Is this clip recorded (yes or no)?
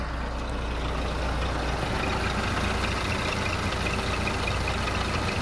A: yes